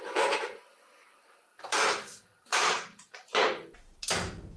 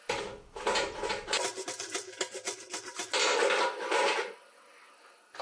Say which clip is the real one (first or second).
second